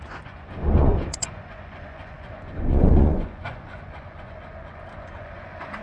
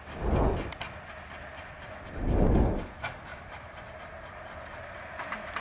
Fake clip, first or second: first